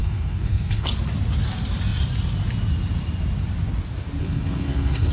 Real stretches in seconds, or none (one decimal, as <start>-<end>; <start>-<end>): 0.9-4.2